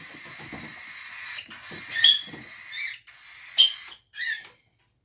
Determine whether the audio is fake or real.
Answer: real